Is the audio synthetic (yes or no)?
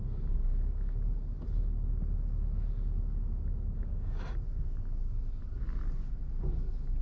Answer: no